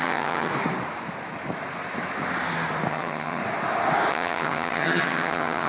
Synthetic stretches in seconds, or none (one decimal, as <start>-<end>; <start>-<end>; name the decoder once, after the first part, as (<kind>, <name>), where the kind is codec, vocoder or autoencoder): 0.0-0.5 (vocoder, HiFi-GAN); 2.9-3.4; 4.1-5.7